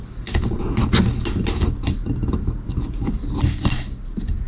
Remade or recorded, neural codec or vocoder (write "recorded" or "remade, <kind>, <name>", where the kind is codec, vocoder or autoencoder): recorded